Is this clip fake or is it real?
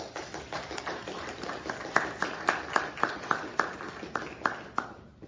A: real